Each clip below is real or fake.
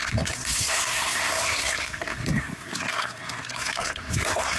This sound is fake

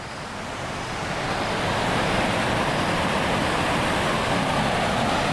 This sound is real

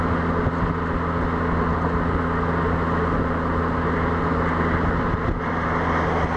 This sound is real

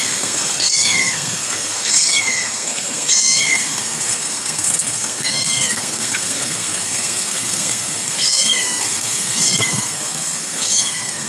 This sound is fake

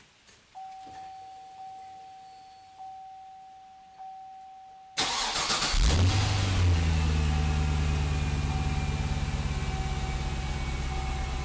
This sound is real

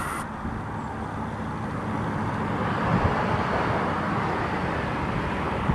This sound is real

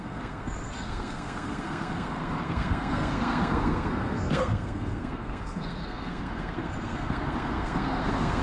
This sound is fake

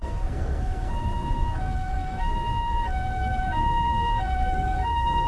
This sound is fake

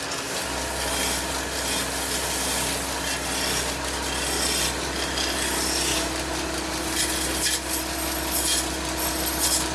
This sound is real